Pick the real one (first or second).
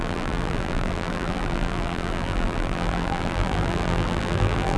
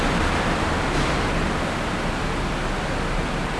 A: second